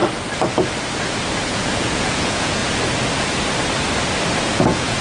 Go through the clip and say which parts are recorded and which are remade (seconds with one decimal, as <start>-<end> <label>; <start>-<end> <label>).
0.0-1.5 recorded; 1.5-2.6 remade; 2.6-4.4 recorded; 4.4-5.0 remade